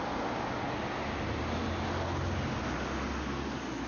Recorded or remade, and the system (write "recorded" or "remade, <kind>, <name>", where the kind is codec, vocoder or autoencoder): recorded